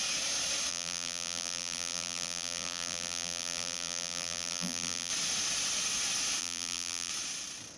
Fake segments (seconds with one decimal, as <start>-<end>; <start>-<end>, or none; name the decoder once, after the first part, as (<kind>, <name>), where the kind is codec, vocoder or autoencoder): 0.7-5.1 (vocoder, BigVGAN v2); 6.4-7.1